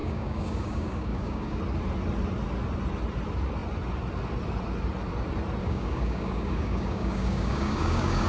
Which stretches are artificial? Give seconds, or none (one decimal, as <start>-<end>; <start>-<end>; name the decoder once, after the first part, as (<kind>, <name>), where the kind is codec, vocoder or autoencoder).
0.0-1.6 (codec, DAC); 5.6-8.3